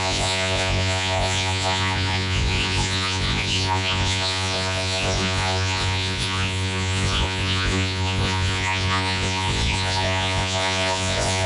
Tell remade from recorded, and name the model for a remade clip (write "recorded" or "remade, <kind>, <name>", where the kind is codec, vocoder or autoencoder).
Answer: remade, vocoder, Vocos